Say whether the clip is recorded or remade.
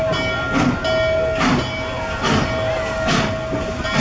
recorded